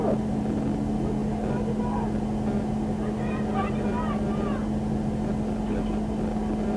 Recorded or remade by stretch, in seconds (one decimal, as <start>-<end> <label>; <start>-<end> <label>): 0.0-6.8 recorded